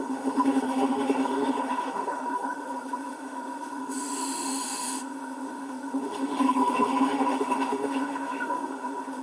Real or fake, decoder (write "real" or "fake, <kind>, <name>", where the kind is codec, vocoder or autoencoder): fake, autoencoder, DAC-VAE